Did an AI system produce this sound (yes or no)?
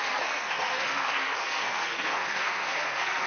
yes